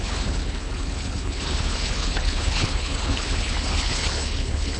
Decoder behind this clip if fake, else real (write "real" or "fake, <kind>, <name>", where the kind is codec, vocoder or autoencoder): fake, codec, HILCodec